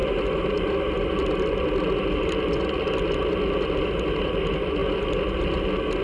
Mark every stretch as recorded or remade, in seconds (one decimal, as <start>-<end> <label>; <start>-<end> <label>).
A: 0.0-6.0 recorded